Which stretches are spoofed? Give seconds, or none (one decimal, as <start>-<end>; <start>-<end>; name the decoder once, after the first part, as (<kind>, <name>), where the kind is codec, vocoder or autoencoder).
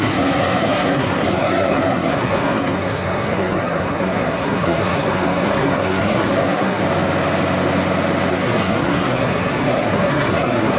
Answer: 0.0-6.8 (codec, SNAC); 8.3-10.8